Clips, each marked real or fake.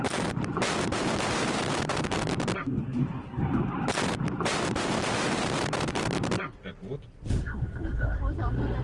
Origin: fake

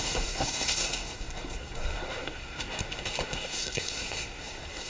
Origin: fake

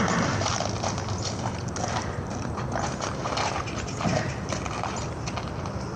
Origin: real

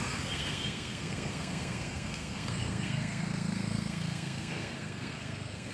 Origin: fake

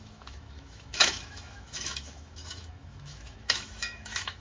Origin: fake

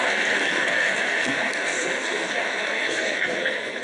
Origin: fake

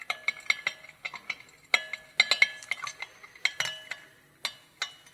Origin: real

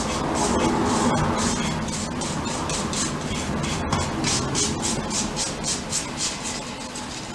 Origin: real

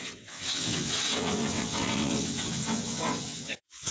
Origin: fake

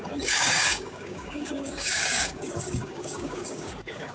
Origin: fake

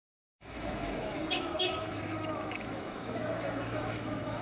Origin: fake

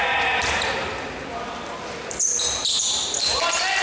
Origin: real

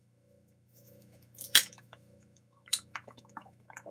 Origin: fake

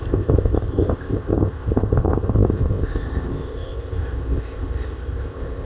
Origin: fake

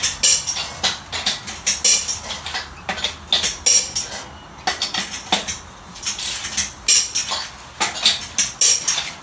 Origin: real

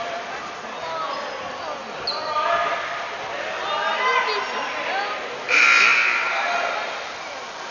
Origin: real